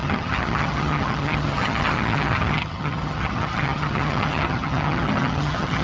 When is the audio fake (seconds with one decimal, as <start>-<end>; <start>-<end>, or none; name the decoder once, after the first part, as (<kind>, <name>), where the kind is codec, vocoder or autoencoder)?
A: 0.0-5.8 (vocoder, HiFi-GAN)

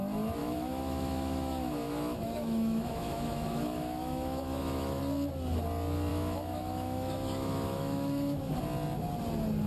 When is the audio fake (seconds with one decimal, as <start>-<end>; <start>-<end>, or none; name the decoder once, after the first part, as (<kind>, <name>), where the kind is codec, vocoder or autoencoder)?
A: 0.4-5.0 (autoencoder, DAC-VAE); 6.1-8.5

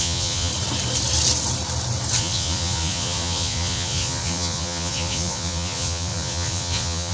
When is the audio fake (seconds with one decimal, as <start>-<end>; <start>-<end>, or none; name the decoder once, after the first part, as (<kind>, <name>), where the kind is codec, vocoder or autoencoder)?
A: 0.0-0.5 (vocoder, Vocos); 2.2-7.1

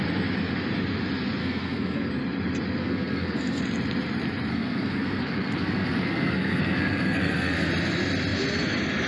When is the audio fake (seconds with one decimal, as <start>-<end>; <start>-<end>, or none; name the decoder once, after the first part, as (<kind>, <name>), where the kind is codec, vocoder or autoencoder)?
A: 1.4-2.1 (codec, SNAC); 2.8-3.6; 4.5-7.7

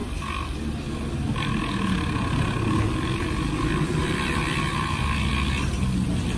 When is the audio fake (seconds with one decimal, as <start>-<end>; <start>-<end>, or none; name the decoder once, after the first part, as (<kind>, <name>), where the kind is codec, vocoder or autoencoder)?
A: 4.0-5.3 (vocoder, BigVGAN v2)